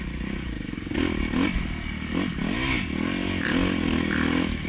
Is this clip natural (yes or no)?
yes